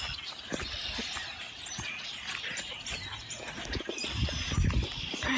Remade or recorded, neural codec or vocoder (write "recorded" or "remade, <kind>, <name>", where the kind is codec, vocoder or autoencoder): recorded